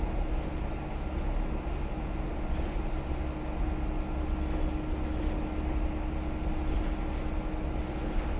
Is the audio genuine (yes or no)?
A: yes